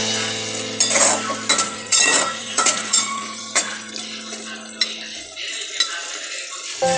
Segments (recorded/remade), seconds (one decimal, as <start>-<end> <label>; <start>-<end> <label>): 0.0-1.5 recorded; 1.5-3.9 remade; 3.9-7.0 recorded